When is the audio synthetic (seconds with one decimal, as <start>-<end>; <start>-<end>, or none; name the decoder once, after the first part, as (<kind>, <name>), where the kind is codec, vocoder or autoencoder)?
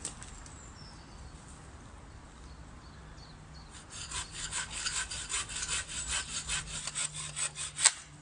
4.3-5.0 (codec, HILCodec)